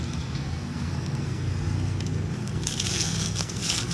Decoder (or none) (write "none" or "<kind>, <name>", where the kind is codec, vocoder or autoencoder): codec, SNAC